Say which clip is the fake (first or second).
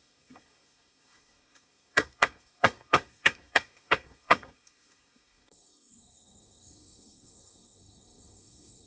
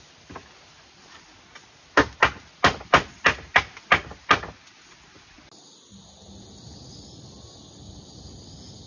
first